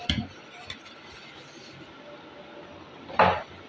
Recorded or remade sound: recorded